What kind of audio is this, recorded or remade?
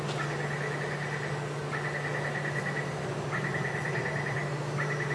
recorded